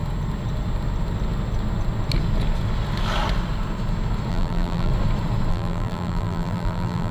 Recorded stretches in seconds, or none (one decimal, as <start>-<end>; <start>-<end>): 0.0-4.3; 4.9-5.5